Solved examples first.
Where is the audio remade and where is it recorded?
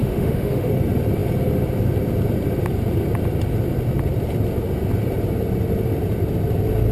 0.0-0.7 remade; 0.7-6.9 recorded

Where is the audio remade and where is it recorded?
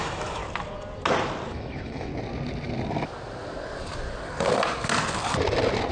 0.0-0.4 remade; 0.4-1.5 recorded; 1.5-2.1 remade; 2.1-5.9 recorded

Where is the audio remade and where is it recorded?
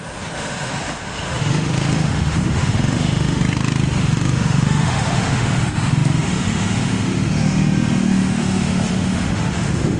0.0-3.4 remade; 3.4-4.0 recorded; 4.0-10.0 remade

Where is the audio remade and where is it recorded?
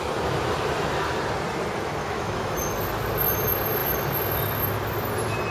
0.0-2.0 recorded; 2.0-2.6 remade; 2.6-5.5 recorded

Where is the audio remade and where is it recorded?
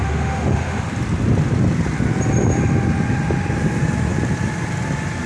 0.0-0.8 remade; 0.8-5.3 recorded